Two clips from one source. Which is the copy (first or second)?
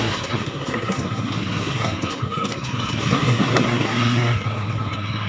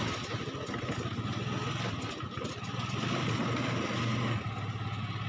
first